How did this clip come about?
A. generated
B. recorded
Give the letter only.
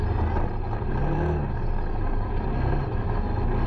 B